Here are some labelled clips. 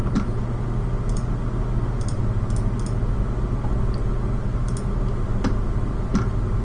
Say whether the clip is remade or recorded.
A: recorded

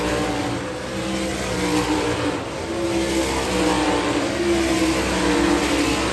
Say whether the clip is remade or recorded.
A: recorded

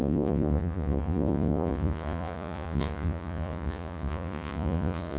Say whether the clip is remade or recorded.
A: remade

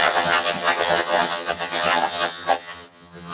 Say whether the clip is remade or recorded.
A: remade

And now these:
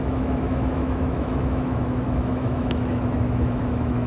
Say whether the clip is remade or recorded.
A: remade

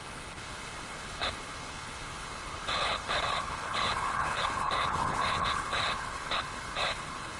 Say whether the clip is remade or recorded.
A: remade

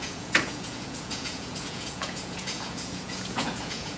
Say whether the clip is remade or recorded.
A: remade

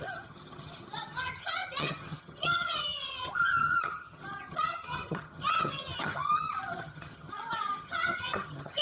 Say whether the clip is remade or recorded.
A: remade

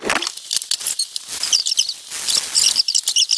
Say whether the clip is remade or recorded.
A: recorded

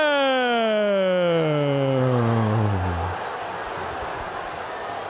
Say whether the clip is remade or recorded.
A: recorded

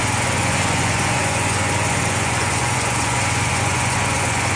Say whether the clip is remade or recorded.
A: remade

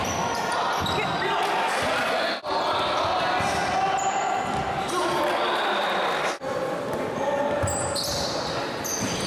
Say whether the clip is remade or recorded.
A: recorded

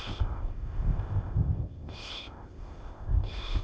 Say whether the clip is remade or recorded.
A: remade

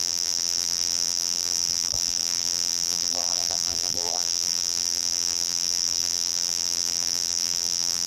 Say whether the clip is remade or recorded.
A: remade